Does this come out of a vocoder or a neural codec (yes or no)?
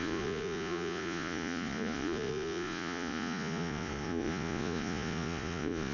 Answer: yes